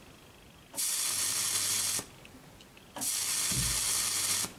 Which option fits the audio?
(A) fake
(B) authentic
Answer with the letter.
B